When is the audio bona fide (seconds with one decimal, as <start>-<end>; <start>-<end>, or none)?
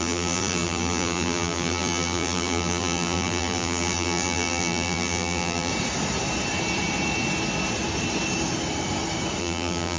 5.7-9.4